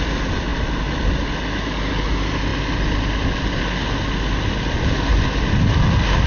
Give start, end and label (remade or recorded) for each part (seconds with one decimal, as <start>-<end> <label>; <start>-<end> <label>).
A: 0.0-6.3 recorded